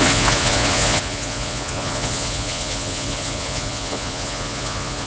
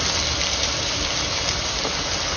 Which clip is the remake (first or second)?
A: first